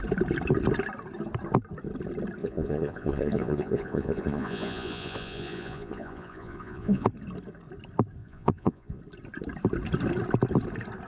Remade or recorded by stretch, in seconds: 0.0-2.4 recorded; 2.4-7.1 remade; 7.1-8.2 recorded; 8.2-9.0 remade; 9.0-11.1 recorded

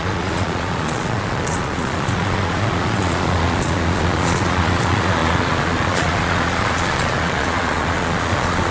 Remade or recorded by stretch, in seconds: 0.0-8.7 remade

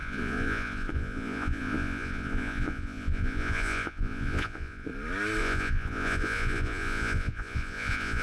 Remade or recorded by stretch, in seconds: 0.0-4.9 remade; 4.9-5.4 recorded; 5.4-8.2 remade

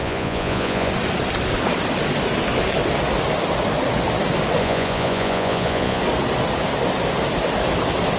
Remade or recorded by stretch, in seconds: 0.0-0.9 remade; 0.9-4.6 recorded; 4.6-6.0 remade; 6.0-8.2 recorded

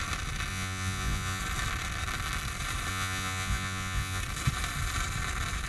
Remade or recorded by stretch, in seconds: 0.0-0.5 recorded; 0.5-1.4 remade; 1.4-2.9 recorded; 2.9-4.2 remade; 4.2-5.7 recorded

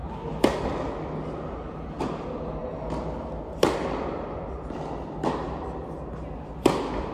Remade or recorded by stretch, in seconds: 0.0-7.1 recorded